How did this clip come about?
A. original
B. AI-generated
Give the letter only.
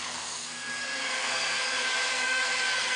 B